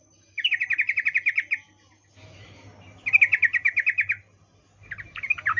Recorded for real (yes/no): yes